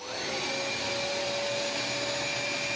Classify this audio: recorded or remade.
recorded